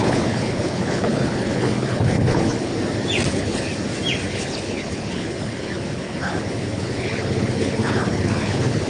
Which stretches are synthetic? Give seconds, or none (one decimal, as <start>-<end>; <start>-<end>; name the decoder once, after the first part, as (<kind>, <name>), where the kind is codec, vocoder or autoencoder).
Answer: 0.0-2.7 (codec, HILCodec); 3.3-3.7; 4.3-8.9